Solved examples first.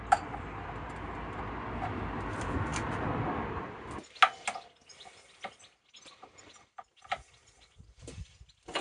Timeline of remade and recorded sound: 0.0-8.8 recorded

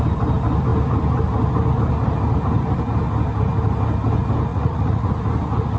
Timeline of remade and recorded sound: 0.0-4.5 recorded; 4.5-5.1 remade; 5.1-5.8 recorded

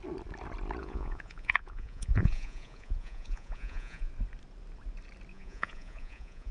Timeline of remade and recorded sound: 0.0-0.8 recorded; 0.8-4.1 remade; 4.1-5.3 recorded; 5.3-6.5 remade

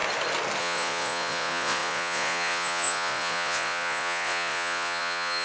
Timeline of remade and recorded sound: 0.0-0.6 recorded; 0.6-5.4 remade

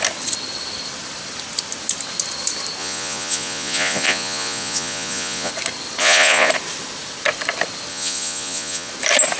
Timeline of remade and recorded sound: 0.0-2.8 recorded; 2.8-5.5 remade; 5.5-6.0 recorded; 6.0-6.5 remade; 6.5-7.9 recorded; 7.9-8.9 remade; 8.9-9.4 recorded

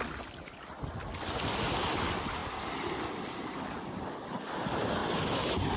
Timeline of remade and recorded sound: 0.0-5.8 recorded

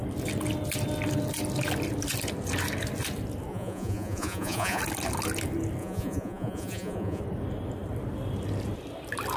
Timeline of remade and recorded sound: 0.0-3.5 recorded; 3.5-4.8 remade; 4.8-5.8 recorded; 5.8-7.2 remade; 7.2-9.4 recorded

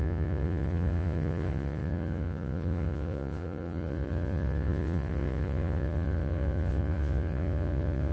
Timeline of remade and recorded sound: 0.0-8.1 remade